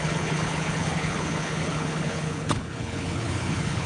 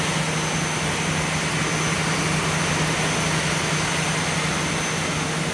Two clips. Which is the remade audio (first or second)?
first